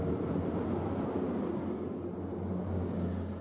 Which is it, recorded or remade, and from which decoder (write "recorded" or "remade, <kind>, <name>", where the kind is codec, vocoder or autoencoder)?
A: recorded